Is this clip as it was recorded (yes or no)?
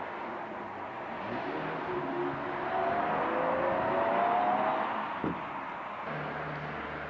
yes